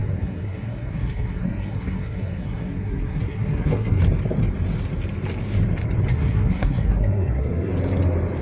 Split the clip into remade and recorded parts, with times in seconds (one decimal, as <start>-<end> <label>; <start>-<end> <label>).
0.0-4.0 remade; 4.0-6.1 recorded; 6.1-7.7 remade; 7.7-8.4 recorded